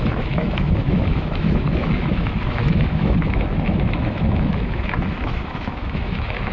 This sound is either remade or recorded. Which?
remade